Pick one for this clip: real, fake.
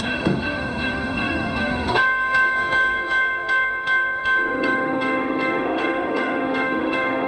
fake